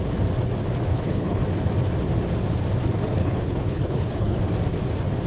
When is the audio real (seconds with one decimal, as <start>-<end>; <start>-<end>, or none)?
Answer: 0.0-0.9; 1.4-3.2; 4.4-5.3